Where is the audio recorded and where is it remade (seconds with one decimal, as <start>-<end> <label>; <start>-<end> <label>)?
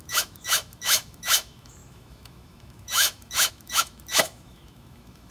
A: 0.0-5.3 remade